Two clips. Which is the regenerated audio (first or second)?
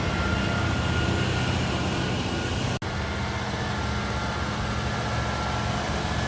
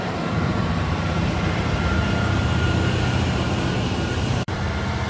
second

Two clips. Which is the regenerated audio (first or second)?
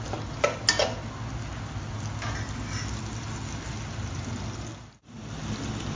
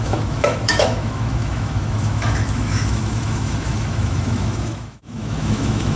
second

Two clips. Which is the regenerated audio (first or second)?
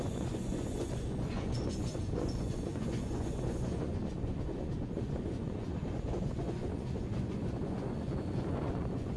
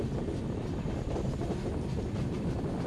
first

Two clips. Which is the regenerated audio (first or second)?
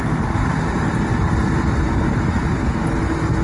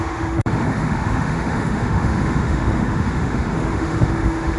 second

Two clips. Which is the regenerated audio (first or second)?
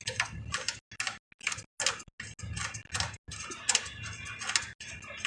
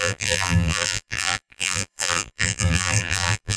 second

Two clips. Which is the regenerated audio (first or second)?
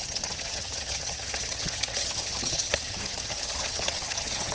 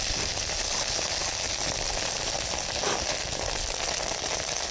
first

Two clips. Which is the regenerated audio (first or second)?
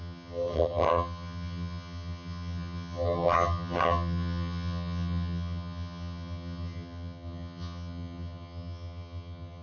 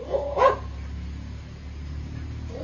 first